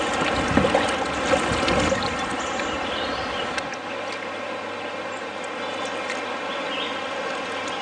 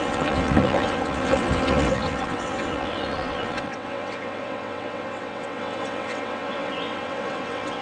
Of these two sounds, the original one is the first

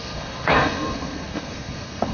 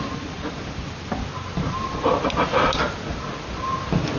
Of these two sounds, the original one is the second